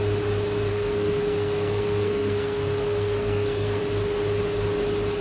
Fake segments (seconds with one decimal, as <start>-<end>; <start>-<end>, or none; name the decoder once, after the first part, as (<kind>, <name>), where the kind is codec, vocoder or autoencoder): 0.7-3.8 (codec, SNAC)